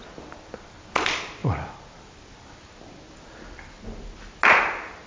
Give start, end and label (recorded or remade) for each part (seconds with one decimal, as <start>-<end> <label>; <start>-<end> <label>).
0.0-5.1 recorded